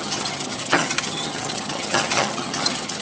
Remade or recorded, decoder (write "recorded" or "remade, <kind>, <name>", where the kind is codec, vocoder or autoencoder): remade, vocoder, HiFi-GAN